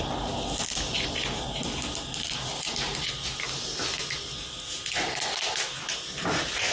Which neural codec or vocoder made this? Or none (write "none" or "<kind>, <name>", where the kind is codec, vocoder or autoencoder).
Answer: none